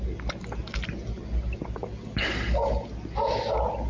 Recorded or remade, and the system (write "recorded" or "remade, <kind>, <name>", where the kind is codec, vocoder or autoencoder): recorded